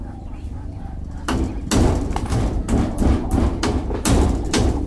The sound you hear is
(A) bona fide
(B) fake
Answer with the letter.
A